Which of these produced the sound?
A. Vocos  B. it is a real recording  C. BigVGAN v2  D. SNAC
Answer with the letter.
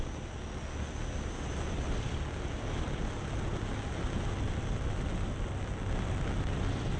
B